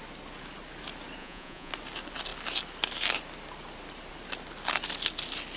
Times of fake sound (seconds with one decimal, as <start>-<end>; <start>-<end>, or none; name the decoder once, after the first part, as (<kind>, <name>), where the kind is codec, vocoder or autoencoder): 1.2-1.7 (vocoder, Vocos)